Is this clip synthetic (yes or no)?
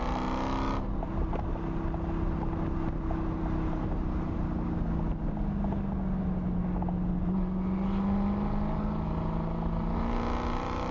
no